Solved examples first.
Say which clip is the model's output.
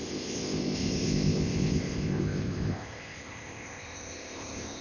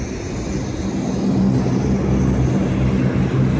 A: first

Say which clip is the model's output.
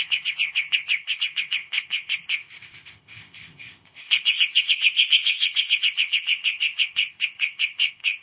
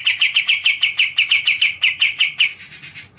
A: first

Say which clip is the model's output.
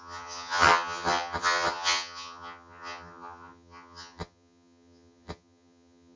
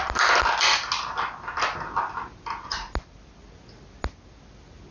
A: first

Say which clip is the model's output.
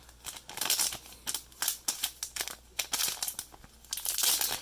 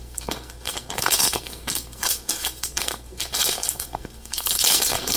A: second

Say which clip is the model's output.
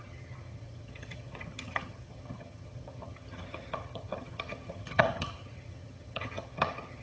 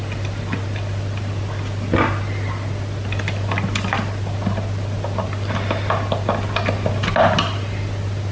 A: first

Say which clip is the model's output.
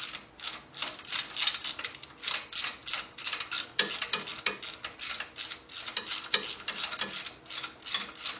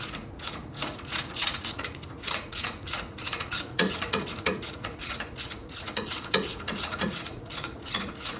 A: second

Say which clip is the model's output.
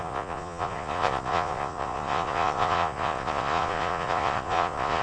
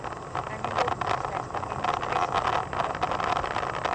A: first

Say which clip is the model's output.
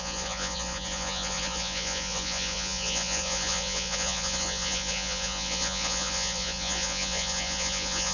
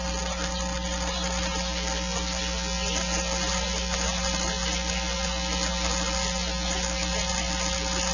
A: first